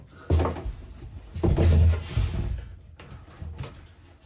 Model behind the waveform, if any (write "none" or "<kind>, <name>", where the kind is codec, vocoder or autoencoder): none